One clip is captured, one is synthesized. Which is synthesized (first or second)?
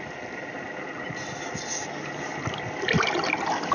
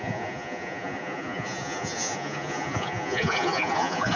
second